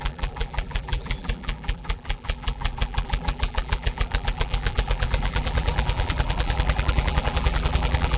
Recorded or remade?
remade